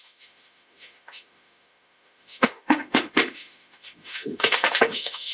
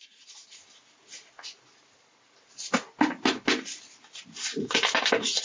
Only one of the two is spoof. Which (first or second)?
first